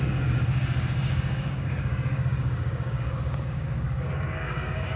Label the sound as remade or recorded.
remade